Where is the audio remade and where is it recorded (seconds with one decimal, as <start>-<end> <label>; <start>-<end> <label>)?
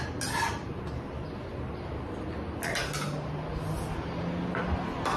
0.0-5.2 recorded